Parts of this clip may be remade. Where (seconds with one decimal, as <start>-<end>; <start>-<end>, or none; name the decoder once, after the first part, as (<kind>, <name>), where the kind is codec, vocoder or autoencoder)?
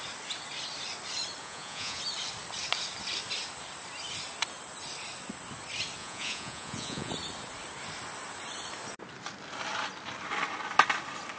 1.4-2.0 (vocoder, Vocos); 6.0-7.1